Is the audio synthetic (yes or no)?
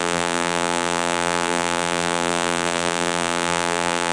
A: yes